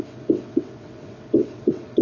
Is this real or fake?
fake